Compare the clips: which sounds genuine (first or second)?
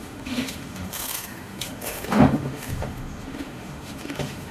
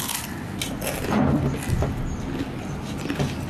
second